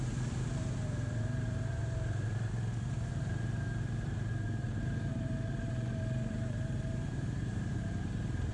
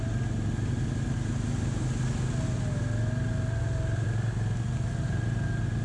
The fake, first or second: first